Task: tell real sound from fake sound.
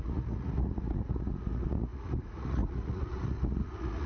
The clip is fake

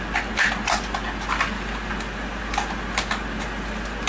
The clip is real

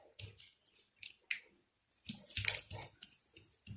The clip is real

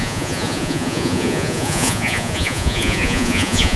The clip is fake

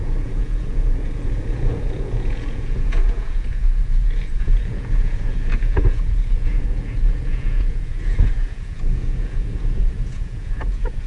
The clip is fake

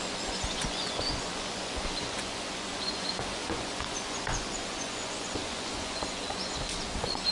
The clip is fake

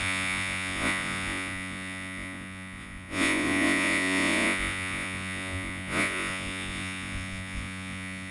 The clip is fake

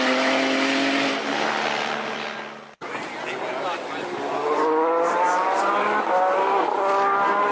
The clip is real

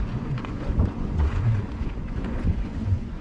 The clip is fake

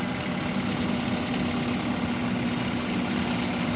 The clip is real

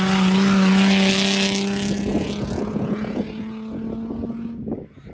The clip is real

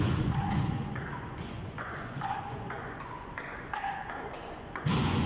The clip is fake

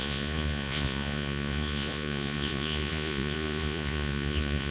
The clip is fake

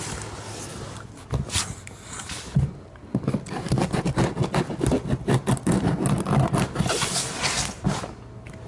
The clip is real